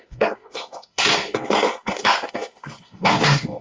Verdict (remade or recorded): remade